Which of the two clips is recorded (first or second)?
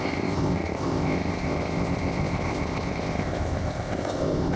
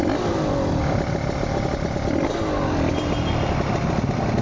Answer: second